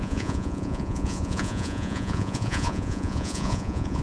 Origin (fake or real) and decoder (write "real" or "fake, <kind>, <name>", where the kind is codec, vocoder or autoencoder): fake, vocoder, Vocos